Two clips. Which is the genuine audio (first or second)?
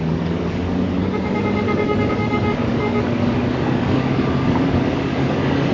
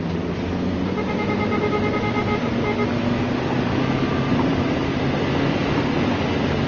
second